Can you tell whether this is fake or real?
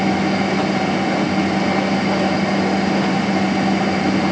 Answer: real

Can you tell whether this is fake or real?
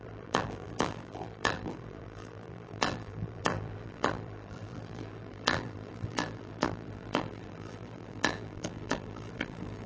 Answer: fake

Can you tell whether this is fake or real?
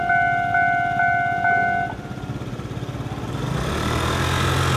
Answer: real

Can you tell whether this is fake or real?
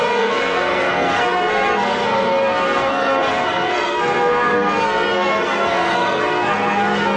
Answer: fake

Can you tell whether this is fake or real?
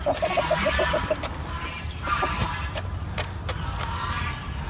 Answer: real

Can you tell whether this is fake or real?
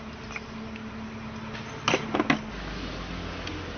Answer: real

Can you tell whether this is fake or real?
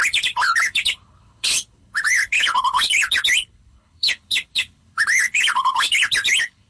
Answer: fake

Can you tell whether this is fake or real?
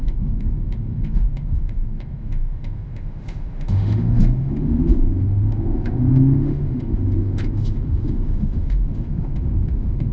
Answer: fake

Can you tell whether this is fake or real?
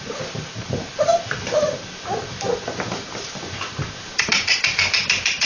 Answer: fake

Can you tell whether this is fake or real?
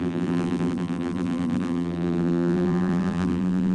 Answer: fake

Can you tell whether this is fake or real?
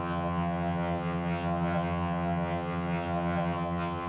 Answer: fake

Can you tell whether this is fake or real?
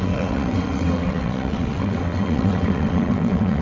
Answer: fake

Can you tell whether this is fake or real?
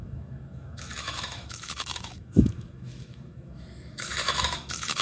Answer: fake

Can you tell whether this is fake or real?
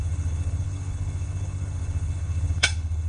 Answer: fake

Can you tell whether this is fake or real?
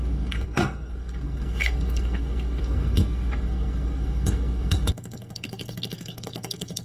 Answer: fake